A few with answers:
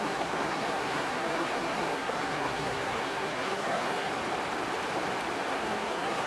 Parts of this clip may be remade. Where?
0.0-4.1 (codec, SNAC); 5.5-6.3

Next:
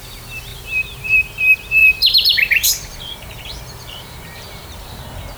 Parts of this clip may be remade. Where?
0.5-1.4 (vocoder, BigVGAN v2); 1.8-5.0

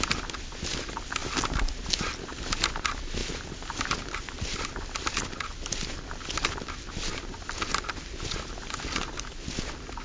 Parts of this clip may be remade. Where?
none

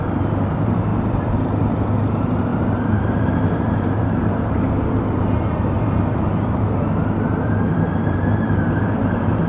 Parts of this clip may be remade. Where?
0.0-6.8 (vocoder, BigVGAN v2); 7.4-9.5

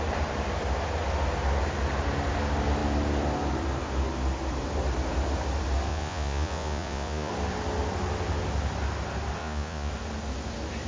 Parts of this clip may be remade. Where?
5.9-7.3 (vocoder, Vocos); 9.4-9.9

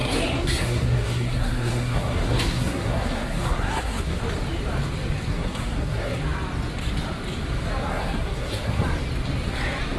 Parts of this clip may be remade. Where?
0.0-4.2 (codec, SNAC); 5.3-6.2; 7.9-8.8